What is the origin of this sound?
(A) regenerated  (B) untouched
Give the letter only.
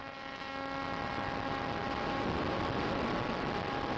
B